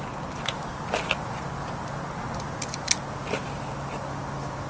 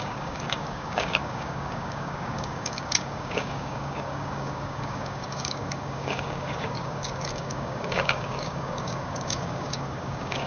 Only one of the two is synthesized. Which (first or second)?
second